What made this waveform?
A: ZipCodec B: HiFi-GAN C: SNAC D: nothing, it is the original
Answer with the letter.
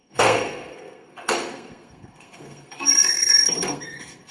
C